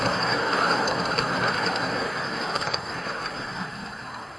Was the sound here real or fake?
fake